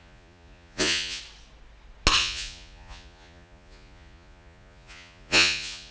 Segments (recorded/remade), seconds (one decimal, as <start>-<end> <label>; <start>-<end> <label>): 0.0-1.2 remade; 1.2-2.2 recorded; 2.2-5.9 remade